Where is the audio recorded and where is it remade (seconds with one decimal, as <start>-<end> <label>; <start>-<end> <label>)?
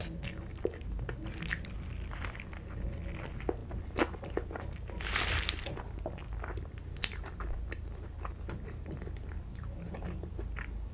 0.0-10.9 recorded